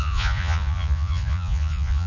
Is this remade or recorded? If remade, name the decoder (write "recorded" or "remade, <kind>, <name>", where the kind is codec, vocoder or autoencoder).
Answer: remade, vocoder, Vocos